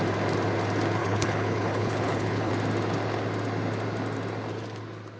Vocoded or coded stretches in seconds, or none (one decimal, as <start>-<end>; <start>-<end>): 1.0-2.5

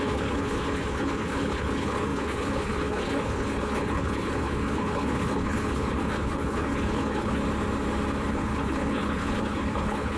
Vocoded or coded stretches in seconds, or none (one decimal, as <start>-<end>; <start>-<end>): 0.0-7.4; 8.3-10.2

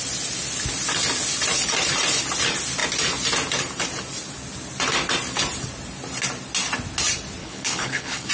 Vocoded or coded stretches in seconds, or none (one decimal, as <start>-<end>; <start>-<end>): 7.4-8.3

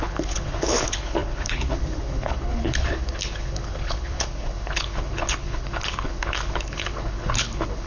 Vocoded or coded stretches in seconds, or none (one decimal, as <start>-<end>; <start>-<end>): 0.0-7.9

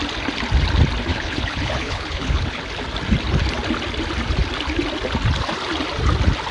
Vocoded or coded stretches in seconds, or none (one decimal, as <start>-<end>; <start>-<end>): 1.1-2.6

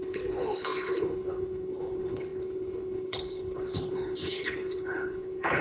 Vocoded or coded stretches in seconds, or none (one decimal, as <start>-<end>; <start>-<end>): 0.0-5.6

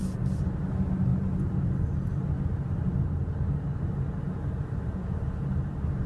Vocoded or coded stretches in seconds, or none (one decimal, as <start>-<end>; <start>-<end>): none